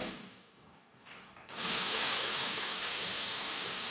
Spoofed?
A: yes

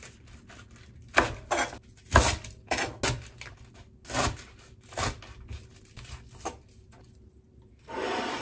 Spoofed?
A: no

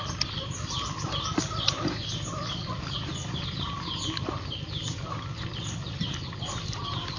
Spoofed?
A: no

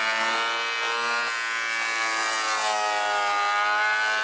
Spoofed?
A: no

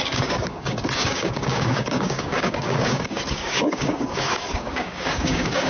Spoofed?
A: yes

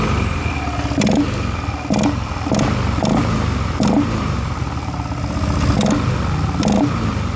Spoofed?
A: no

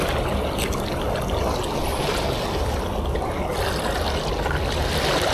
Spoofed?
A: no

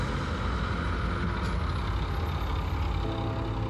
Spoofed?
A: no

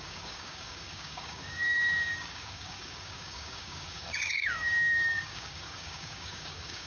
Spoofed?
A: yes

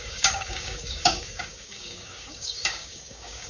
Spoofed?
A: yes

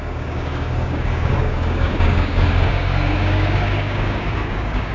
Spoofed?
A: yes